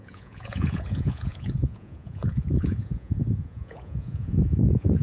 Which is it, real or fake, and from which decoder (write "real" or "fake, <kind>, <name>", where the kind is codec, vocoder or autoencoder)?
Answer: fake, vocoder, Vocos